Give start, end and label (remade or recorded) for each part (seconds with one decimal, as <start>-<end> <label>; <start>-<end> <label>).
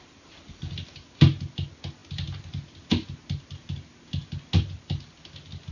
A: 0.0-5.7 recorded